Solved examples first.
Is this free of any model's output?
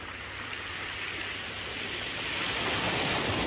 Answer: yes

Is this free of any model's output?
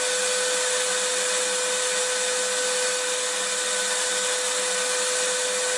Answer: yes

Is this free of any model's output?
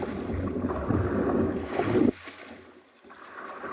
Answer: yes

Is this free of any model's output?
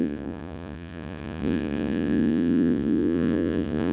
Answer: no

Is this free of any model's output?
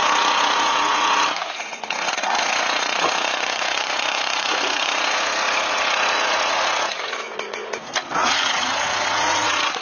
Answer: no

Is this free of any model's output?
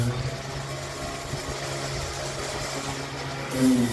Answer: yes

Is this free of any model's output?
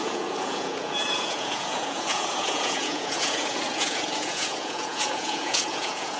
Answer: no